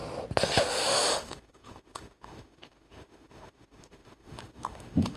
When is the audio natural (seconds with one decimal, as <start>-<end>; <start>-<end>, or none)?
0.0-0.7